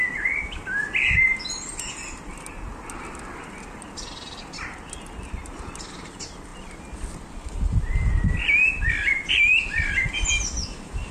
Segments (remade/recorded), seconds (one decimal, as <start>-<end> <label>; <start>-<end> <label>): 0.0-11.1 recorded